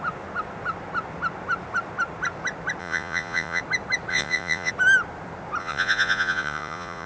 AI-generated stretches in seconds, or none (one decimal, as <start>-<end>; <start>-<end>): 2.8-3.6; 4.1-4.7; 5.6-7.1